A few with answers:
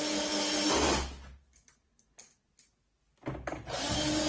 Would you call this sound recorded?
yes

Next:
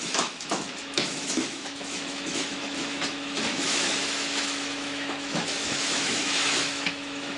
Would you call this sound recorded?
no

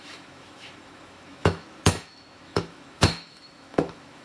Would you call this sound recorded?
no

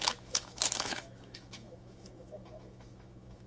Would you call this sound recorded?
no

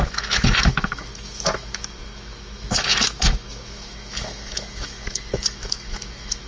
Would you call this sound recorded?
no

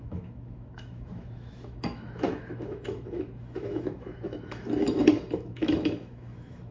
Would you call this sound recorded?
no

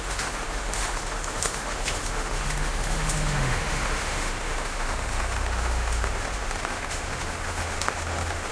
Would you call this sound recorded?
no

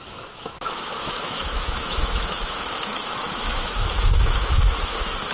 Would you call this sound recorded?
no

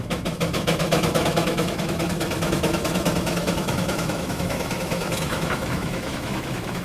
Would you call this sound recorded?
no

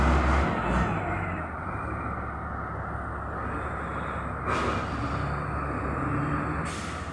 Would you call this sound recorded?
yes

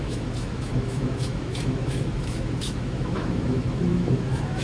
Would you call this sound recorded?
no